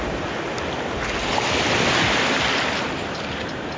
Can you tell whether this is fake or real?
real